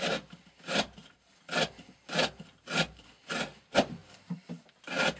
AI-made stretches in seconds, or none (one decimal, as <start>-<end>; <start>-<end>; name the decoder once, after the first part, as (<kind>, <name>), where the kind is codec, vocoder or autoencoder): 0.0-1.0 (vocoder, BigVGAN v2); 2.9-4.0